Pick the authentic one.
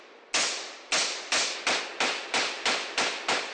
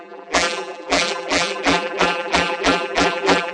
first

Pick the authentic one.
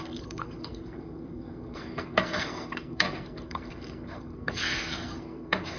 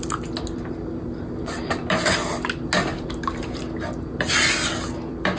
second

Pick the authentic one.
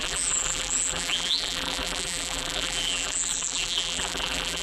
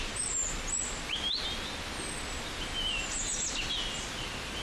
second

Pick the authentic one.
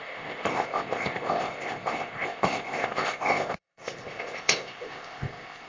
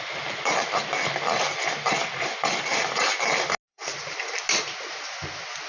second